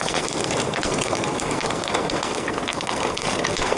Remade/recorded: remade